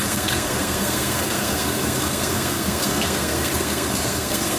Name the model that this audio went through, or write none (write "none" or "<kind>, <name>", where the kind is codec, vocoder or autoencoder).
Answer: codec, SNAC